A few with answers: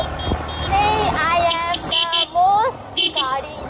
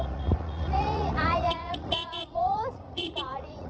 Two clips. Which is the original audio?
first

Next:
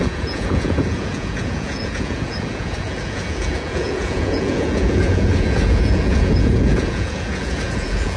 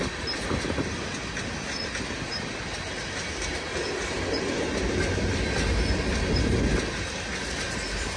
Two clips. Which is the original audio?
second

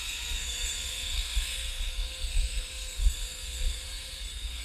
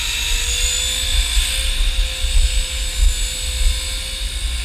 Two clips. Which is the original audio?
second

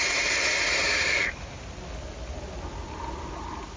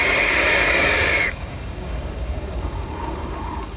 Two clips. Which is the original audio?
first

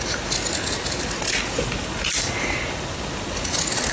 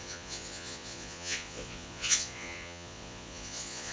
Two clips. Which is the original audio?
first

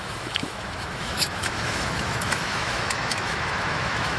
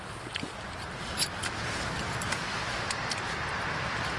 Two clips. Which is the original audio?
second